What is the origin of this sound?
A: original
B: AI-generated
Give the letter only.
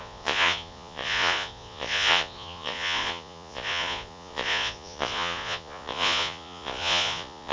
B